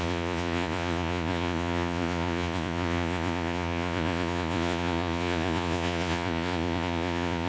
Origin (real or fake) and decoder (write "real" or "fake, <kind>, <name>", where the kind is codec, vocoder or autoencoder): fake, vocoder, Vocos